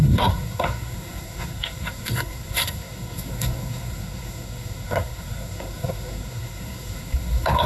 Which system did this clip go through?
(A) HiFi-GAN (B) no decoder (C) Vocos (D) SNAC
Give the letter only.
D